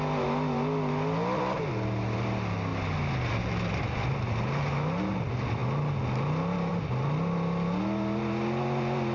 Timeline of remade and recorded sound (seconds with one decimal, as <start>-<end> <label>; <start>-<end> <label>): 0.0-9.1 recorded